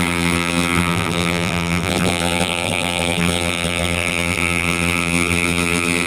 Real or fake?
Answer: fake